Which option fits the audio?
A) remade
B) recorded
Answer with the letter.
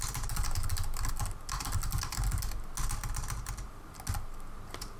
B